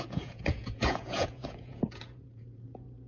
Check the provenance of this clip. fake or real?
fake